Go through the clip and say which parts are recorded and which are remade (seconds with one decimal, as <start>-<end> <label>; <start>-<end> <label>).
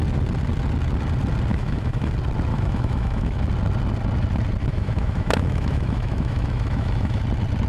0.0-1.5 recorded; 1.5-2.1 remade; 2.1-2.5 recorded; 2.5-3.4 remade; 3.4-4.6 recorded; 4.6-7.2 remade; 7.2-7.7 recorded